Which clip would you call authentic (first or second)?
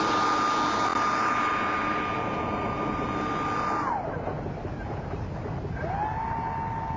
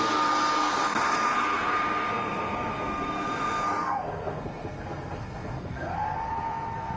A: first